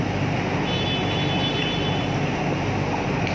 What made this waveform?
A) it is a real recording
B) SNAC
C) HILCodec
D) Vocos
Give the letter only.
A